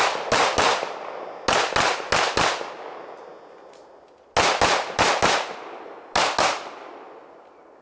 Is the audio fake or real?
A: real